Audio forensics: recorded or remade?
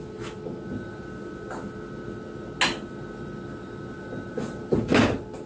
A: recorded